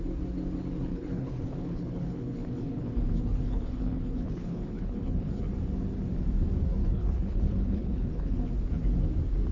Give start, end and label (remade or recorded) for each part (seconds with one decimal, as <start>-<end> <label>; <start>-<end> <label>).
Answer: 0.0-0.9 recorded; 0.9-5.4 remade; 5.4-6.8 recorded; 6.8-8.5 remade; 8.5-9.5 recorded